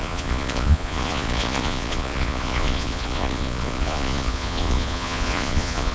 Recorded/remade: remade